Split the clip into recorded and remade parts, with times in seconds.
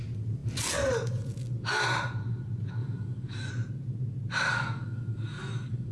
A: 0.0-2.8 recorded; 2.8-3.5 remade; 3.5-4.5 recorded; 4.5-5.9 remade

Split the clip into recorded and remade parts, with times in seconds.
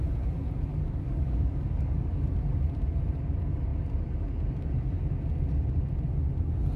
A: 0.0-0.7 recorded; 0.7-2.1 remade; 2.1-6.8 recorded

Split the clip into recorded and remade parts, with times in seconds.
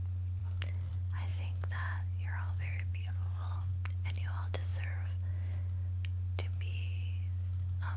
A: 0.0-2.9 recorded; 2.9-3.7 remade; 3.7-8.0 recorded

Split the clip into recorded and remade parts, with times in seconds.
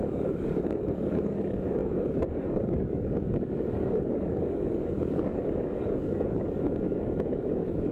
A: 0.0-7.9 remade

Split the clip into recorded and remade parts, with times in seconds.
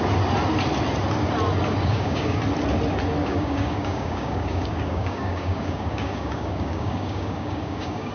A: 0.0-1.8 recorded; 1.8-2.4 remade; 2.4-3.2 recorded; 3.2-8.1 remade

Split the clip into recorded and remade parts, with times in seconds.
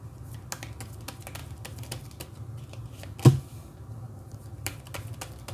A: 0.0-5.5 recorded